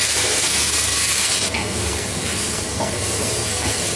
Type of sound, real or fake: fake